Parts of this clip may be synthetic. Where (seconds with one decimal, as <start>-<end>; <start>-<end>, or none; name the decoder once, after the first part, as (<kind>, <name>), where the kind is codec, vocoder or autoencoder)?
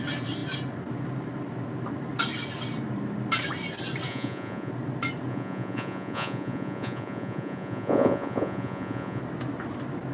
4.1-4.7 (vocoder, Vocos); 5.3-9.2